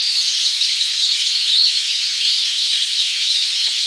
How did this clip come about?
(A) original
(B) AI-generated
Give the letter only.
B